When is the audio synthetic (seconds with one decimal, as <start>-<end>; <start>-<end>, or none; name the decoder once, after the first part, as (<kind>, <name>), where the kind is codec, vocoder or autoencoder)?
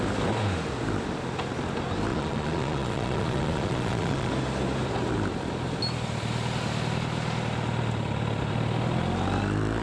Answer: 2.1-4.3 (vocoder, Vocos)